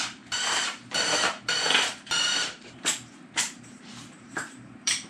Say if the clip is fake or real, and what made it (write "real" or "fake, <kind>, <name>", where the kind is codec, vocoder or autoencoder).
fake, vocoder, BigVGAN v2